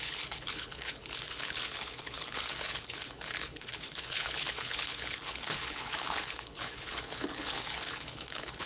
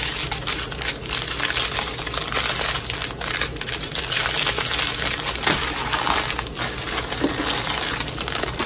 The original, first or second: second